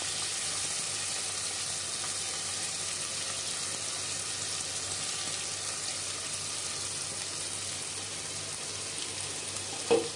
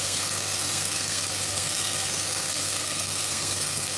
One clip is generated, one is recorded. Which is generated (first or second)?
second